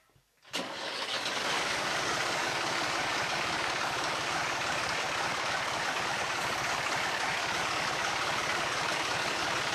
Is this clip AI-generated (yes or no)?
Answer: yes